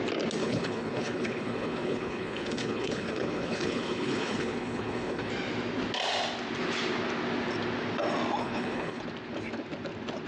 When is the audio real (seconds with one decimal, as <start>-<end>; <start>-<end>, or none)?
0.0-0.4; 5.3-8.4; 9.0-10.3